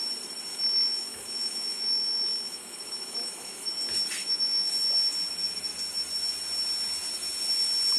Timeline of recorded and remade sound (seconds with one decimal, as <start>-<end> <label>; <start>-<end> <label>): 0.0-0.5 recorded; 0.5-3.7 remade; 3.7-4.2 recorded; 4.2-4.7 remade; 4.7-8.0 recorded